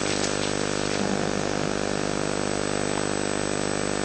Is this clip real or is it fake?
real